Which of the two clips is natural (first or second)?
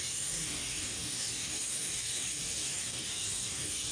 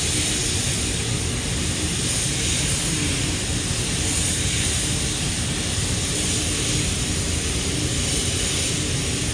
second